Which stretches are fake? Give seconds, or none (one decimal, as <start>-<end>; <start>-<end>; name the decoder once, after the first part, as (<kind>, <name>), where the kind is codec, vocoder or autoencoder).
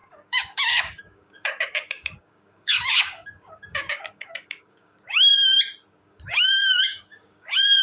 0.0-5.3 (codec, DAC); 6.0-7.8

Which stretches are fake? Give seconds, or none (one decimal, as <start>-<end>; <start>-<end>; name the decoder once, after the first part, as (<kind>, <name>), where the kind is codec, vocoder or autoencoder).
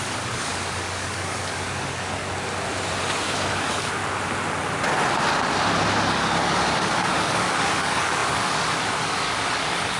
0.0-2.2 (codec, DAC); 3.0-4.0; 6.1-10.0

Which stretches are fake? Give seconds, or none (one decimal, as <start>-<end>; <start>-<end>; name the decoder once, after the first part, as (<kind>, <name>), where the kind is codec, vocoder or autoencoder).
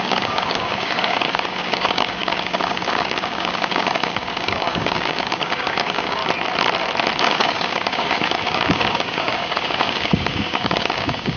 0.0-6.2 (codec, DAC); 7.2-11.4